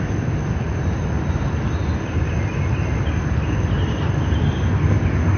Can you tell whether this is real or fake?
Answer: real